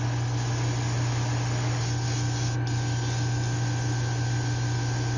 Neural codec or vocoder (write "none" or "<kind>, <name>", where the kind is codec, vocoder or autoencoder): none